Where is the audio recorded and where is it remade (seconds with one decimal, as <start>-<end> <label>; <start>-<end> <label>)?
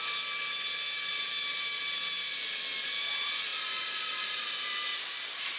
0.0-1.1 recorded; 1.1-1.8 remade; 1.8-4.9 recorded; 4.9-5.6 remade